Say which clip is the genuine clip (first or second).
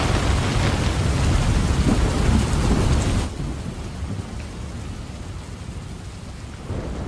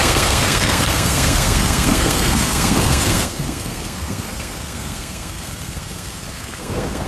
first